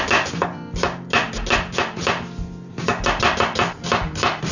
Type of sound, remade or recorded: recorded